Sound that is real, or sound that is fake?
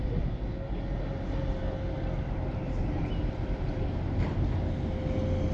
real